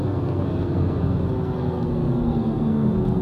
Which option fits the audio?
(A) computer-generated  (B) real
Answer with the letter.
A